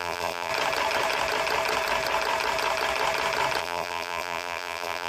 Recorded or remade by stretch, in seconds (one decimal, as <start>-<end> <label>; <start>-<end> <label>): 0.0-0.5 remade; 0.5-3.6 recorded; 3.6-5.1 remade